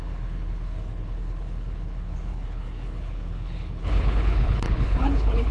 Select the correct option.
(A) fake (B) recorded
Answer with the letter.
A